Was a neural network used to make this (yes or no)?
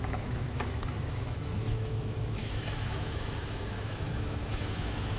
yes